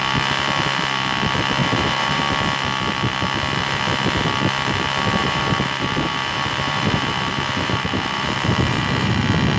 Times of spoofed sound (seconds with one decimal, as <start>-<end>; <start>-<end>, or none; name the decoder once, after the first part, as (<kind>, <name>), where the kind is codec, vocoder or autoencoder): 1.6-2.2 (vocoder, BigVGAN v2); 5.2-9.2